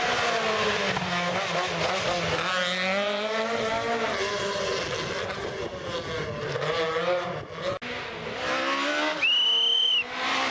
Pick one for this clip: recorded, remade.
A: recorded